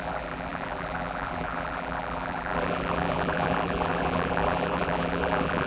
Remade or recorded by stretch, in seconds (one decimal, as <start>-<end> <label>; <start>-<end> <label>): 0.0-5.7 remade